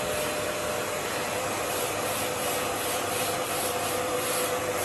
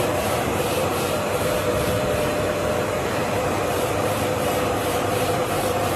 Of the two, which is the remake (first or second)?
second